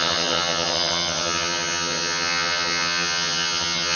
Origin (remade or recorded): remade